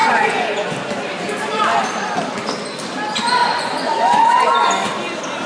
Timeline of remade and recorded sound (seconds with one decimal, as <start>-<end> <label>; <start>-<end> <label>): 0.0-0.7 remade; 0.7-3.4 recorded; 3.4-4.3 remade; 4.3-5.5 recorded